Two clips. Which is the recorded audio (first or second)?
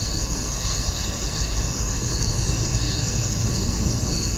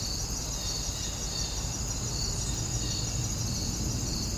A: second